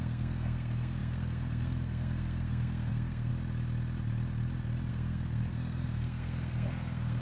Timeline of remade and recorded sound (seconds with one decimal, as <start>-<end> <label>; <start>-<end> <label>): 0.0-3.3 remade; 3.3-4.9 recorded; 4.9-7.2 remade